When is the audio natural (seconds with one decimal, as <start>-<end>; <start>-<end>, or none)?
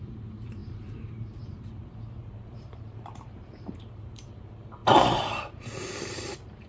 none